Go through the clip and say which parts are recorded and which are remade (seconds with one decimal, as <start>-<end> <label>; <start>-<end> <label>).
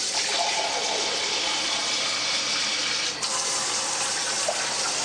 0.0-5.0 recorded